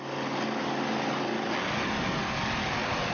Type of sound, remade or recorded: recorded